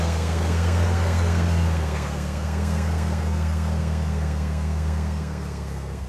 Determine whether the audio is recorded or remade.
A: remade